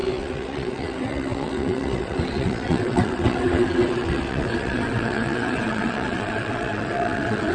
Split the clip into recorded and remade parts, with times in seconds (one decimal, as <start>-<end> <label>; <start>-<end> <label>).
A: 0.0-7.5 remade